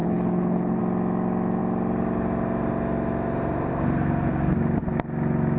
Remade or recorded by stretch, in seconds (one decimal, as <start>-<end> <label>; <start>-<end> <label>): 0.0-0.8 remade; 0.8-5.6 recorded